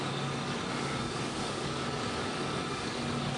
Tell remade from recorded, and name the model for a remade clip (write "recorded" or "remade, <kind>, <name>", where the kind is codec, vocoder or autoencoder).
remade, codec, DAC